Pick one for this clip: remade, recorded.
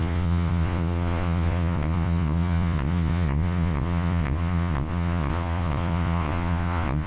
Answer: remade